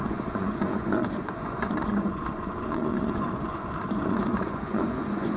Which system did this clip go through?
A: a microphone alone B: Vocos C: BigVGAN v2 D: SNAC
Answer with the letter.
B